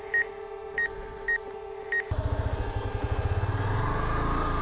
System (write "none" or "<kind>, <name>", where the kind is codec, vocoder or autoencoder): none